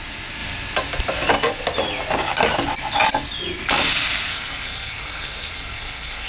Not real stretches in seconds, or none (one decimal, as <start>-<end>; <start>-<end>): 4.3-6.3